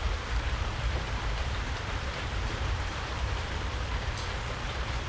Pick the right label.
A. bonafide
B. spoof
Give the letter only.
B